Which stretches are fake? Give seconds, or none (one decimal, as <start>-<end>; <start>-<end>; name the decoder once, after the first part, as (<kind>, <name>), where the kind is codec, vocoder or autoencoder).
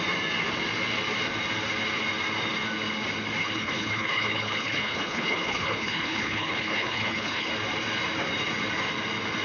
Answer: 3.4-7.5 (codec, HILCodec)